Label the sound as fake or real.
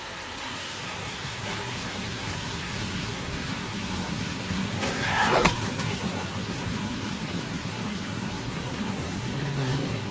fake